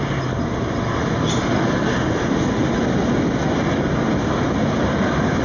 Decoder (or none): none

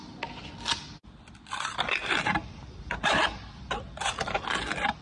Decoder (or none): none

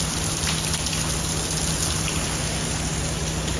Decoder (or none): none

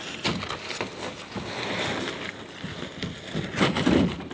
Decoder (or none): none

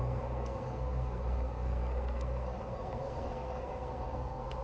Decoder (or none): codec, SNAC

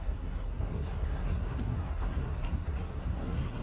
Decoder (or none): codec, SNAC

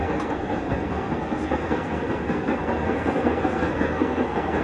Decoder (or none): codec, SNAC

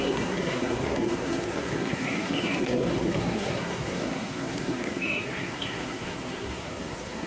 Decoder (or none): codec, SNAC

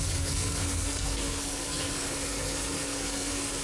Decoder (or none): codec, SNAC